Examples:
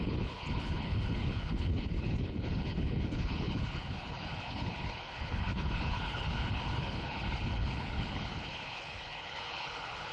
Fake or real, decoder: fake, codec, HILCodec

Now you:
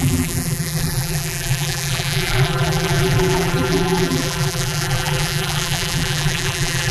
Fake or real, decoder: fake, vocoder, BigVGAN v2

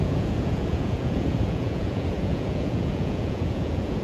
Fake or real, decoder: fake, vocoder, Vocos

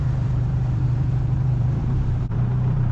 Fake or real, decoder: fake, vocoder, BigVGAN v2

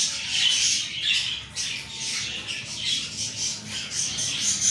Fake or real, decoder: real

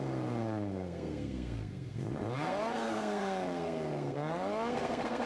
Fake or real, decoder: fake, codec, SNAC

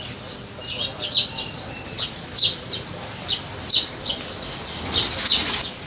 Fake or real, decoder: real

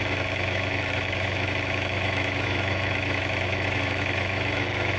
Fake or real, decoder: fake, autoencoder, DAC-VAE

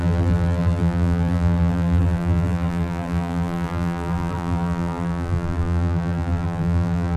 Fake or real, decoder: fake, vocoder, BigVGAN v2